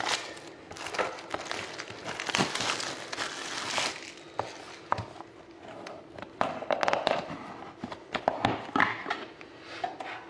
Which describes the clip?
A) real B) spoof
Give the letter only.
A